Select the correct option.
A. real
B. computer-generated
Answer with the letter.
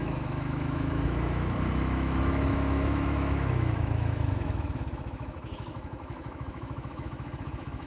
B